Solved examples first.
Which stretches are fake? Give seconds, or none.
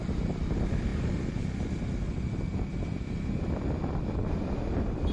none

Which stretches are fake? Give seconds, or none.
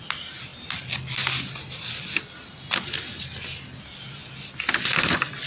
none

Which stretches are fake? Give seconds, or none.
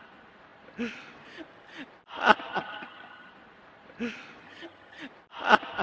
2.5-3.3 (vocoder, HiFi-GAN); 4.4-5.0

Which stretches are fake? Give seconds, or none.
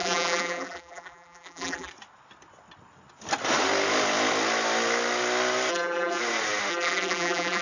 0.0-1.9 (vocoder, BigVGAN v2); 5.7-6.2; 6.7-7.6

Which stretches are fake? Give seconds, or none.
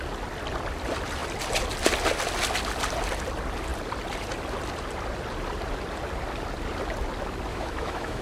7.5-8.2 (autoencoder, DAC-VAE)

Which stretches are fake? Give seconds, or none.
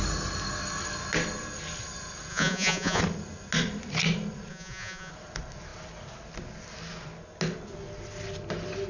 2.3-3.0 (vocoder, Vocos); 4.5-5.1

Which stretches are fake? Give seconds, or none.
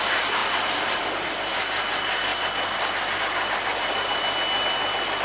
none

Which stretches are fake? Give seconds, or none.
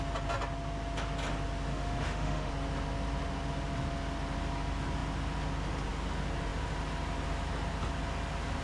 1.7-2.5 (autoencoder, DAC-VAE)